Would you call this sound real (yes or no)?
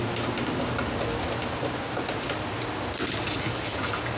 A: yes